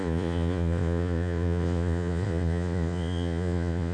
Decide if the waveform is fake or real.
fake